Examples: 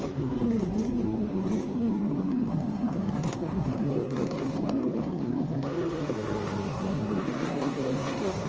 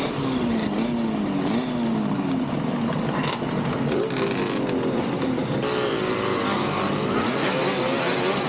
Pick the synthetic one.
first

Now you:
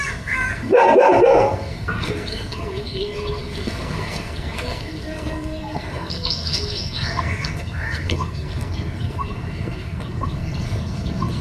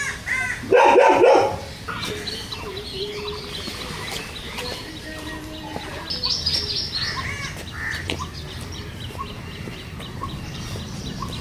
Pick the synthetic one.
first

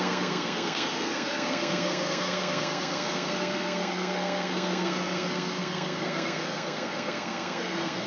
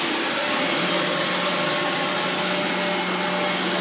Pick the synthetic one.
first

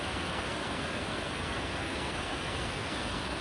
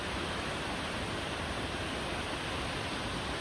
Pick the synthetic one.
first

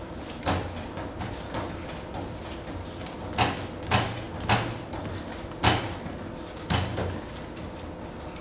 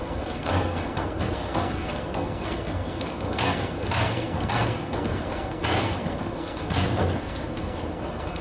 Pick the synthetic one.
second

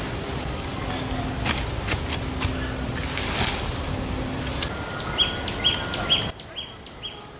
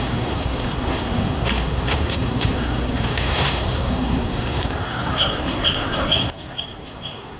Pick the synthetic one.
second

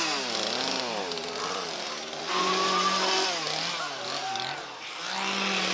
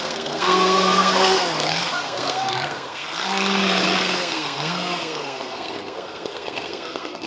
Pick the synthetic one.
second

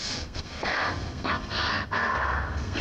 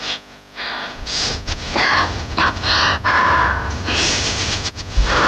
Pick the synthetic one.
first